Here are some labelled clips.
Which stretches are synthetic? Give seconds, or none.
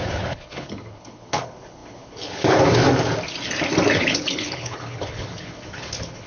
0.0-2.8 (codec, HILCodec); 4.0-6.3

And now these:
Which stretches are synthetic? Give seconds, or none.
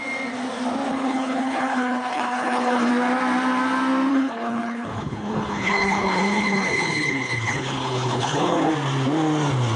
0.9-2.9 (codec, HILCodec); 4.1-8.7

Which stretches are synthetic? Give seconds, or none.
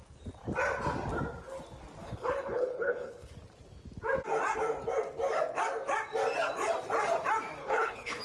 2.0-3.3 (codec, HILCodec); 7.6-8.2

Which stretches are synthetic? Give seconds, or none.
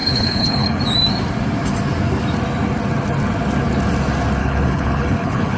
0.0-0.8 (codec, HILCodec); 4.4-5.6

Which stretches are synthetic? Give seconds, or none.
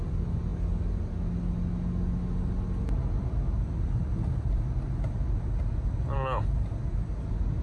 none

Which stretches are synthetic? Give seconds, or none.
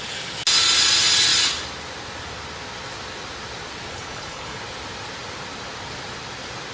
3.9-4.6 (codec, HILCodec)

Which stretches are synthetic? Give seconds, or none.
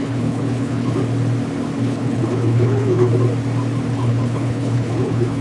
0.0-1.0 (codec, HILCodec); 1.8-3.1; 3.9-5.4